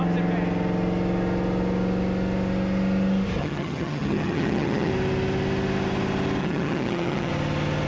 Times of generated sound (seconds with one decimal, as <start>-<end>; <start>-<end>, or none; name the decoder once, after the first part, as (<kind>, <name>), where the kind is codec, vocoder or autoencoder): 3.4-4.9 (vocoder, HiFi-GAN); 6.4-7.3